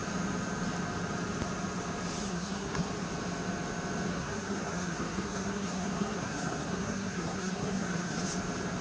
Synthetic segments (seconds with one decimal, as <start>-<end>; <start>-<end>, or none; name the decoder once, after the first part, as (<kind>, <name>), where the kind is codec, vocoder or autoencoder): 2.2-2.9 (codec, SNAC); 4.1-8.2